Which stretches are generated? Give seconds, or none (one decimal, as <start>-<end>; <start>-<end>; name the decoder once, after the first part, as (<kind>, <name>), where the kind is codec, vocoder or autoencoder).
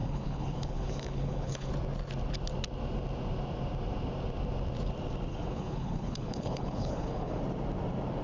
0.0-1.7 (codec, HILCodec); 5.3-7.4